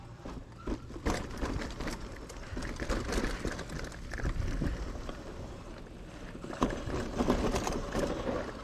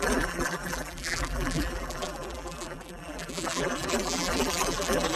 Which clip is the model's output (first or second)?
second